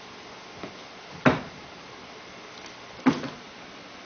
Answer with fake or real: real